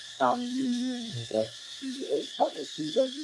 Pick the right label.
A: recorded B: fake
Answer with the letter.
B